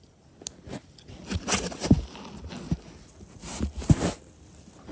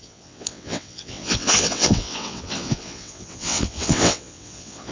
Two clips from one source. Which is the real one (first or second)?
first